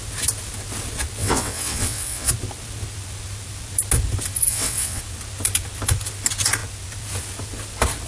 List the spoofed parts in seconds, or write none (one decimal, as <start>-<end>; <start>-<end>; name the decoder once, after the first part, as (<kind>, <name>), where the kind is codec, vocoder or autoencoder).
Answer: 1.2-2.3 (vocoder, WaveNeXt); 4.5-5.0